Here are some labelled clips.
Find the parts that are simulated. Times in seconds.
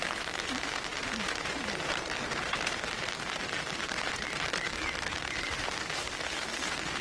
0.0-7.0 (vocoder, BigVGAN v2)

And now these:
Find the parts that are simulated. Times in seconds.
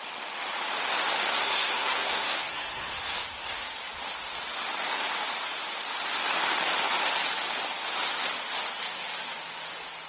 1.3-2.9 (codec, SNAC)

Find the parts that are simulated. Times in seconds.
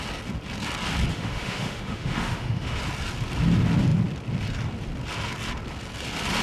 1.1-2.8 (autoencoder, DAC-VAE)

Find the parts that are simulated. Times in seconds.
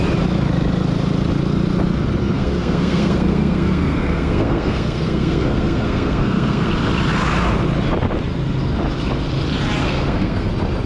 2.2-6.7 (codec, SNAC); 9.8-10.5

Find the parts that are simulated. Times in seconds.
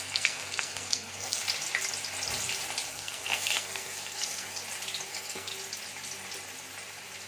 0.0-1.4 (codec, SNAC); 2.9-4.6; 5.1-5.5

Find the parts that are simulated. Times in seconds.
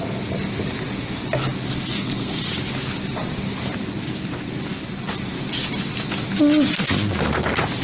1.9-2.4 (codec, SNAC)